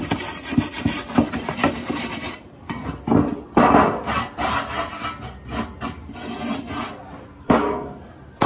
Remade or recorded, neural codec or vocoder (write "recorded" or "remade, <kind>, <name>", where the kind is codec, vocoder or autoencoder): recorded